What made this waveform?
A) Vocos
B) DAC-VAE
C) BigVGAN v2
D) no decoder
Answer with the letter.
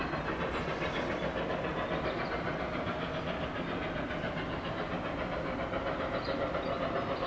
D